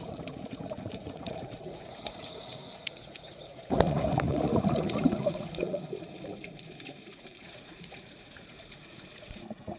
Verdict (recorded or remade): remade